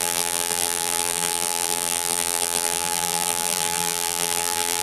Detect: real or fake fake